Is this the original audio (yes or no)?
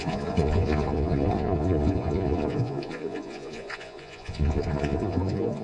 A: no